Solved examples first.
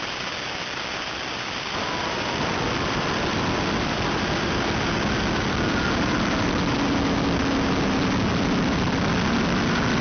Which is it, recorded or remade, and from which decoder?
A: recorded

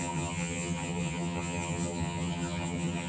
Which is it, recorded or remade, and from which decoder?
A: remade, vocoder, HiFi-GAN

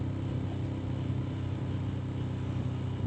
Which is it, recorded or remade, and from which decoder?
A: recorded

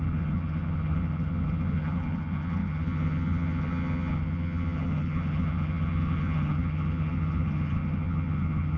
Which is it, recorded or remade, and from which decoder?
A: remade, vocoder, HiFi-GAN